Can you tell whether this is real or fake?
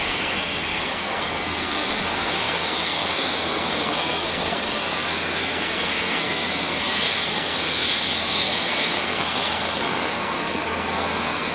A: fake